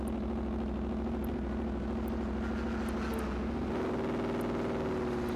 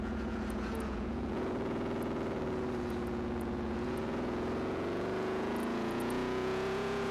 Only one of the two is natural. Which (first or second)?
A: first